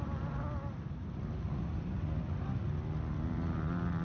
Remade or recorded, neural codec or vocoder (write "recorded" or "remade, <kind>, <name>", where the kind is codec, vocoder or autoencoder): recorded